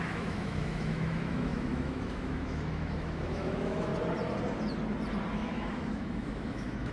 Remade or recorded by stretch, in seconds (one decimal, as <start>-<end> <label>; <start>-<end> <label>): 0.0-3.9 remade; 3.9-5.3 recorded; 5.3-6.9 remade